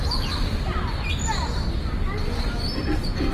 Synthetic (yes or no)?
no